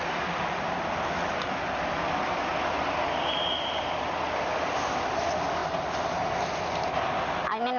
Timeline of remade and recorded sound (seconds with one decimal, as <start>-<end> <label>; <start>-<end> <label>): 0.0-7.8 recorded